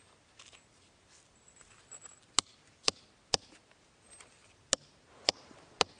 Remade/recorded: recorded